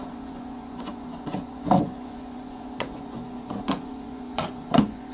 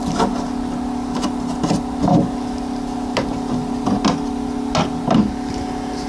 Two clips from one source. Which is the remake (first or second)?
first